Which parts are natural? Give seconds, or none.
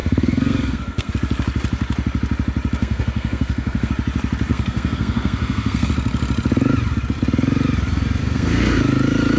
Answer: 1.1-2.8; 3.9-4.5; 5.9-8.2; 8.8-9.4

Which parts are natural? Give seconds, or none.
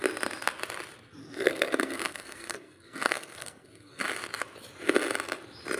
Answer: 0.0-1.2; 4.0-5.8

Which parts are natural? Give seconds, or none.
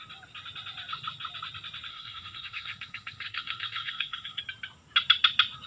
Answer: 0.0-1.9; 4.4-5.7